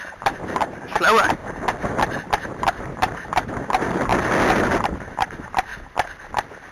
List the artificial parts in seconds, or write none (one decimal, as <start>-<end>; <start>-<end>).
0.0-1.4; 2.3-4.1; 4.7-5.7